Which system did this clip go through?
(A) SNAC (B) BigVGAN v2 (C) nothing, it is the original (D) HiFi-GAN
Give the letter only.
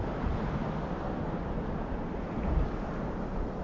C